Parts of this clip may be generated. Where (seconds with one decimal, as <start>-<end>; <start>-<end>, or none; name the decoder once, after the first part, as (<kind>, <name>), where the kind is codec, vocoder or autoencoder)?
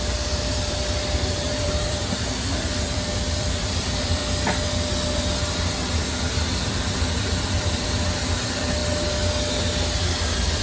0.0-4.2 (vocoder, BigVGAN v2); 6.5-8.8